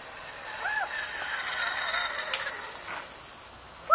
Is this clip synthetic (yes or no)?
no